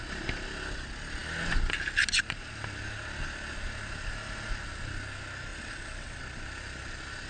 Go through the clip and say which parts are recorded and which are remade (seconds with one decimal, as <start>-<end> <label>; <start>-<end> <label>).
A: 0.0-5.5 recorded; 5.5-6.2 remade; 6.2-7.3 recorded